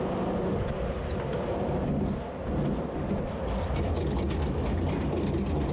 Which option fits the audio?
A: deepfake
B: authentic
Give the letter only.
B